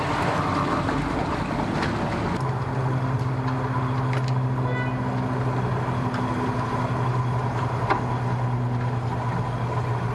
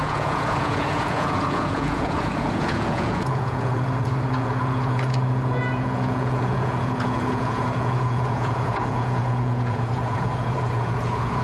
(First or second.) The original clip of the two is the first